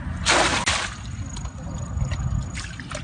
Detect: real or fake real